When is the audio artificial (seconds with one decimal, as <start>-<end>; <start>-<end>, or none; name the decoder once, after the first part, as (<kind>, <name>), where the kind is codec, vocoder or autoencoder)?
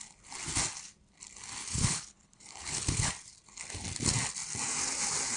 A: 1.6-3.1 (codec, HILCodec)